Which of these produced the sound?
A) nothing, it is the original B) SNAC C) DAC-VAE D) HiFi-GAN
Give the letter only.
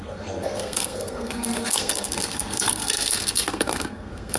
B